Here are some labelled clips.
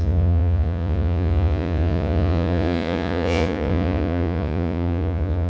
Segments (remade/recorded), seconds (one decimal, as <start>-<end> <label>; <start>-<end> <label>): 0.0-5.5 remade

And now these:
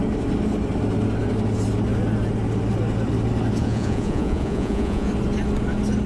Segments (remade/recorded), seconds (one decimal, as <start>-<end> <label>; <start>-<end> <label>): 0.0-3.6 recorded; 3.6-5.1 remade; 5.1-6.1 recorded

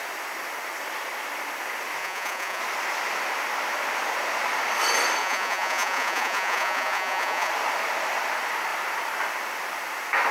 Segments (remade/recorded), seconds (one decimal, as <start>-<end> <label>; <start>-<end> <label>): 0.0-2.0 recorded; 2.0-2.6 remade; 2.6-5.2 recorded; 5.2-7.5 remade; 7.5-10.3 recorded

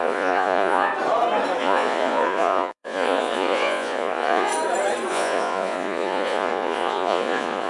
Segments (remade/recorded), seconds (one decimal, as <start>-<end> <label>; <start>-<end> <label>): 0.0-0.9 remade; 0.9-1.6 recorded; 1.6-4.5 remade; 4.5-5.1 recorded; 5.1-7.7 remade

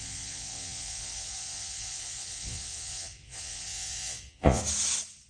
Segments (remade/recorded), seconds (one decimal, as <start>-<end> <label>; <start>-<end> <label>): 0.0-4.6 remade; 4.6-5.3 recorded

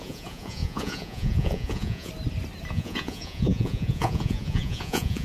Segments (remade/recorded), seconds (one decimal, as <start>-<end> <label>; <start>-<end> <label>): 0.0-2.1 remade; 2.1-2.7 recorded; 2.7-5.2 remade